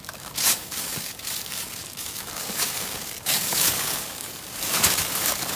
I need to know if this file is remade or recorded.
remade